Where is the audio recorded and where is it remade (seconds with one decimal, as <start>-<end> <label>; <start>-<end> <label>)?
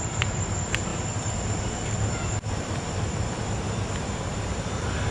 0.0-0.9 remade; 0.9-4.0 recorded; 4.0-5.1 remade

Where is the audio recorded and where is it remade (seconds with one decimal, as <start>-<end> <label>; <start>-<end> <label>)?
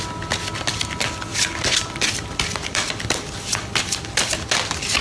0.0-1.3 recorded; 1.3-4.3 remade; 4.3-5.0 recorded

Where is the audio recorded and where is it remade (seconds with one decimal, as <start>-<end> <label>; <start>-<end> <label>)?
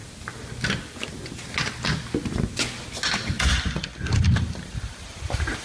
0.0-3.4 recorded; 3.4-5.6 remade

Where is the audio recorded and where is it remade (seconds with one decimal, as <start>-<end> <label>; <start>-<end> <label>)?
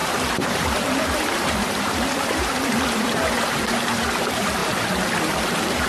0.0-4.6 remade; 4.6-5.2 recorded; 5.2-5.9 remade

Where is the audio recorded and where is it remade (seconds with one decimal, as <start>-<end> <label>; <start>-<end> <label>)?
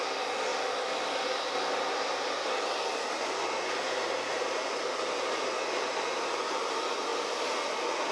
0.0-8.1 recorded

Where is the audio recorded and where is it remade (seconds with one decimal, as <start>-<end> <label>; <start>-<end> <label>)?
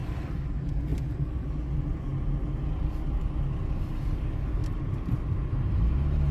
0.0-0.9 recorded; 0.9-1.5 remade; 1.5-4.6 recorded; 4.6-5.8 remade; 5.8-6.3 recorded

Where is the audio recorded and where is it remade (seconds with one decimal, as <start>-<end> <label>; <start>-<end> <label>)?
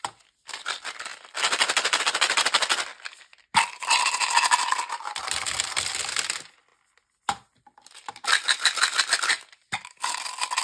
0.0-1.1 recorded; 1.1-2.0 remade; 2.0-10.6 recorded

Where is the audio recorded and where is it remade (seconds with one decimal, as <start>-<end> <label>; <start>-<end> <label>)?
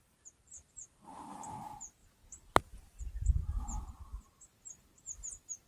0.0-2.0 remade; 2.0-3.0 recorded; 3.0-5.7 remade